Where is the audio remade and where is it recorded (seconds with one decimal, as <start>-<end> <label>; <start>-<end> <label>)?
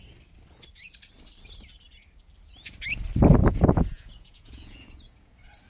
0.0-3.4 recorded; 3.4-5.3 remade; 5.3-5.7 recorded